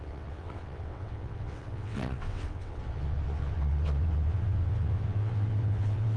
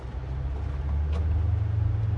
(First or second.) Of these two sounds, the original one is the second